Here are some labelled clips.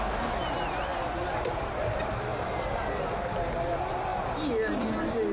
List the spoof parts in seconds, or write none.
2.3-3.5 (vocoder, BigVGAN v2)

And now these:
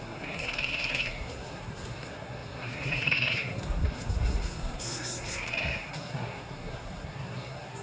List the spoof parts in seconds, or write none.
0.0-7.8 (codec, SNAC)

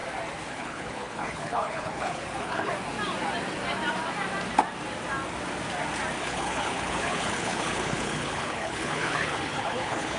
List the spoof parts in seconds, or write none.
0.5-2.7 (codec, HILCodec); 6.2-10.2

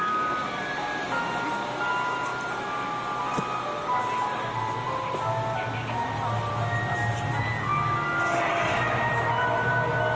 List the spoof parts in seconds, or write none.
none

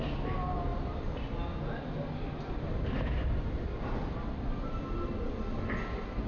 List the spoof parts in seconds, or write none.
none